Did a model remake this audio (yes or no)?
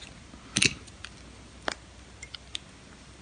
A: no